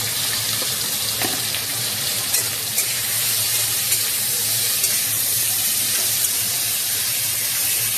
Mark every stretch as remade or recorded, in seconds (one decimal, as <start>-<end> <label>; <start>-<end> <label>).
0.0-1.7 recorded; 1.7-6.5 remade; 6.5-8.0 recorded